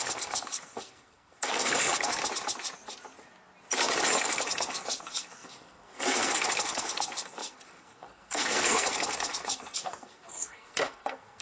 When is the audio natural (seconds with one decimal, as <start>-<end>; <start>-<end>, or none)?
2.2-4.2